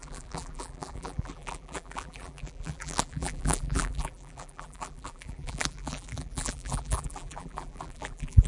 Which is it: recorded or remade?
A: remade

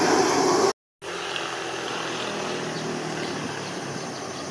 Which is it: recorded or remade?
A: recorded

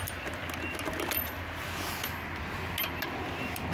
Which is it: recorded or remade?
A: recorded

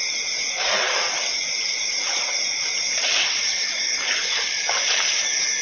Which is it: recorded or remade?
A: remade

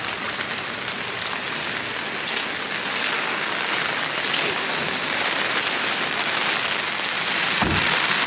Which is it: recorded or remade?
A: recorded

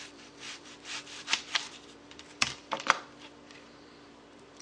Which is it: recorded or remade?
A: remade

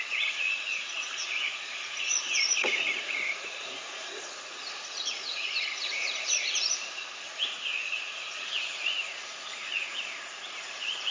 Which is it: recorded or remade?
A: remade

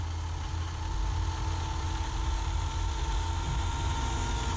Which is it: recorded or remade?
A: recorded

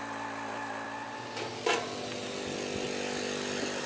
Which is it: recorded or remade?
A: recorded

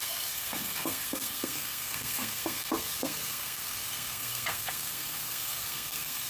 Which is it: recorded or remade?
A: remade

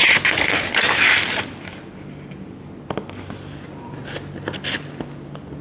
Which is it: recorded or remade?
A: recorded